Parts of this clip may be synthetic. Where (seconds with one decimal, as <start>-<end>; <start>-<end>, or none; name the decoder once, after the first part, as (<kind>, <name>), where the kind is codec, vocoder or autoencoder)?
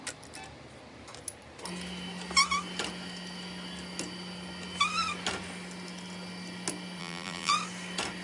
7.0-7.5 (vocoder, BigVGAN v2)